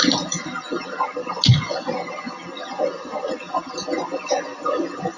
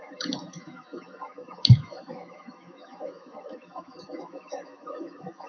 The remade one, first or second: second